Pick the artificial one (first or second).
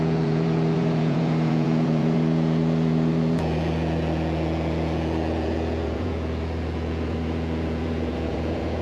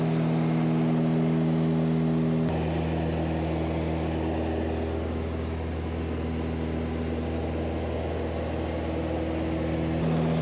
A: first